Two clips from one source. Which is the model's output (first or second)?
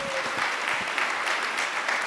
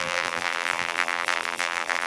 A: second